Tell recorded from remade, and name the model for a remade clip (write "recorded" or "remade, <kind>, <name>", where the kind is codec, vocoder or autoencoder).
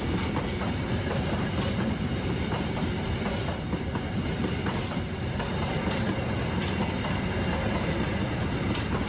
recorded